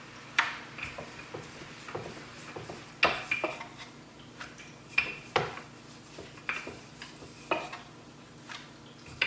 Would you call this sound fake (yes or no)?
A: no